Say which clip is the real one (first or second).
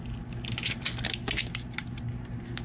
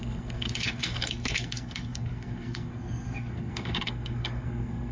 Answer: first